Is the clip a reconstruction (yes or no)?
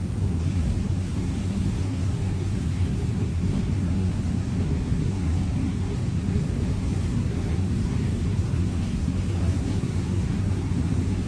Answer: yes